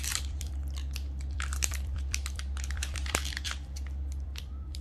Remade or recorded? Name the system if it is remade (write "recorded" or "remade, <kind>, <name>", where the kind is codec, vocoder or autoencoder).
remade, vocoder, BigVGAN v2